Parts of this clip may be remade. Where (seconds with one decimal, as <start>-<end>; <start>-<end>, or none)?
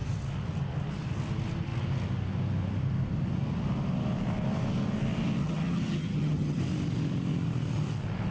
5.4-6.6